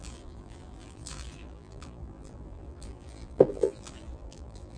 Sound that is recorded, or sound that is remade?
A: remade